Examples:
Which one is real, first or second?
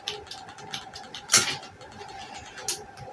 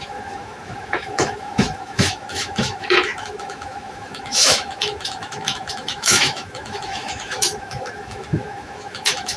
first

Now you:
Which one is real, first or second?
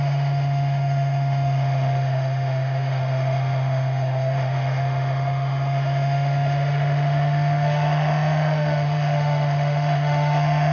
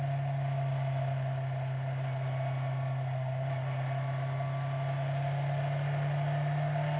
second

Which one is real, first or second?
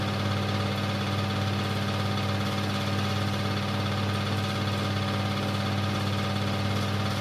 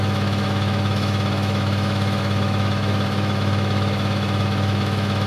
first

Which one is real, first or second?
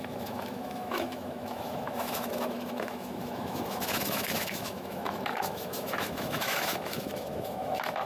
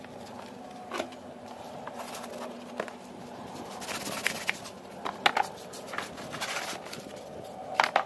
second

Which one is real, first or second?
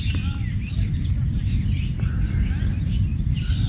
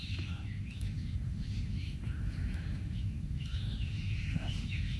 first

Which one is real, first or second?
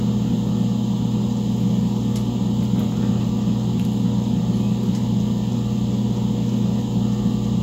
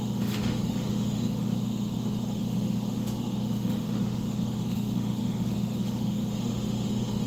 first